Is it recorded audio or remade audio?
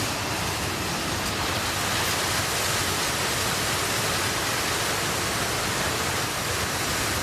recorded